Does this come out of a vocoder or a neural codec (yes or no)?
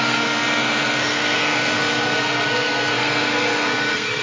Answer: yes